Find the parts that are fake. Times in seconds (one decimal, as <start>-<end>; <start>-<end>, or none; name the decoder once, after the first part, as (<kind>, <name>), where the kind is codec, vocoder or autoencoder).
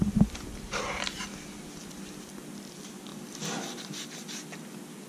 none